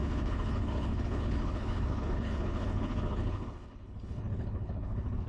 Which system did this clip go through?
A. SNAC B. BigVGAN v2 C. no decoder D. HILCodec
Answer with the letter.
D